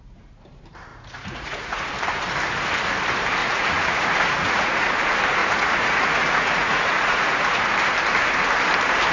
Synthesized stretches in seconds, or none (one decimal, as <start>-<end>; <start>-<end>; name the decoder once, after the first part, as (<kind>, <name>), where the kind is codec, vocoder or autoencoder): 0.9-1.9 (vocoder, Vocos); 3.4-4.9; 5.4-7.7

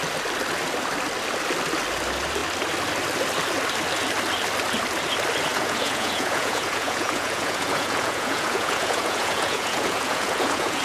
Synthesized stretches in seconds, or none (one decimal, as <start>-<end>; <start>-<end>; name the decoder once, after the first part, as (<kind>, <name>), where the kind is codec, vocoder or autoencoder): 5.5-10.8 (vocoder, Vocos)

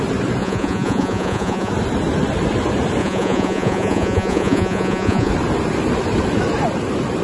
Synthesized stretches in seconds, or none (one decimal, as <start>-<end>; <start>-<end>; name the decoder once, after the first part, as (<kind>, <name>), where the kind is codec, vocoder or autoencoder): 0.4-1.7 (vocoder, Vocos); 3.0-5.3

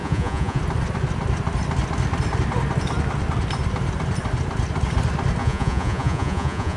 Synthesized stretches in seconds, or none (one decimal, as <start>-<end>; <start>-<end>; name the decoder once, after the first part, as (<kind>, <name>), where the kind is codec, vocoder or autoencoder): 0.0-0.6 (vocoder, Vocos); 5.4-6.8

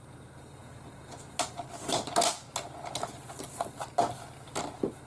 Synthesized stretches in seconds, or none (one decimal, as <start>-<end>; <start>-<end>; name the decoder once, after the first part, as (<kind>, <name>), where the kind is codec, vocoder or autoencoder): none